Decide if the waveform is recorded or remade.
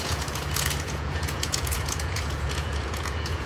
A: remade